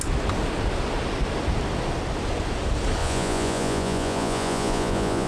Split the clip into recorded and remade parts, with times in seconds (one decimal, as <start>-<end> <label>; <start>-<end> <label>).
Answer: 0.0-3.0 recorded; 3.0-5.3 remade